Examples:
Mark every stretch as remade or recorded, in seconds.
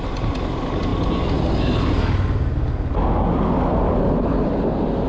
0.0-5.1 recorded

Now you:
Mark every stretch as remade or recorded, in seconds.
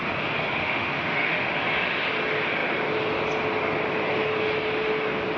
0.0-0.6 recorded; 0.6-1.5 remade; 1.5-5.4 recorded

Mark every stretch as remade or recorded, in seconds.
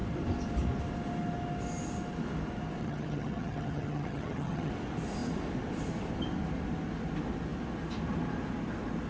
0.0-2.8 recorded; 2.8-4.7 remade; 4.7-9.1 recorded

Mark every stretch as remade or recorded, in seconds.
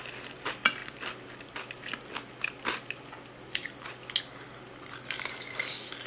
0.0-6.1 recorded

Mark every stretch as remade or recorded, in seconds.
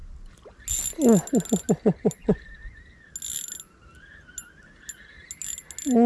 0.0-6.1 recorded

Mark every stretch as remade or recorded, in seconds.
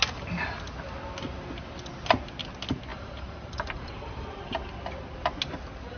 0.0-2.9 recorded; 2.9-4.5 remade; 4.5-6.0 recorded